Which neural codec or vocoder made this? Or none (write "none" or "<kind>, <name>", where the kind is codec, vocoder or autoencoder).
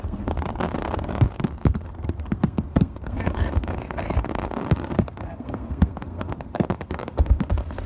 codec, SNAC